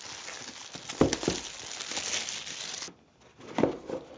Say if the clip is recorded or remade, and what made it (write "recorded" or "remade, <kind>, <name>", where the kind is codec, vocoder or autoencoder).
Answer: recorded